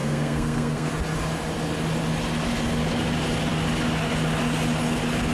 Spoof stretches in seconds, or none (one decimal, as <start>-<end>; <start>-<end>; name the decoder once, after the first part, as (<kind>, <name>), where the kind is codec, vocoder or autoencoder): 0.0-0.9 (codec, SNAC)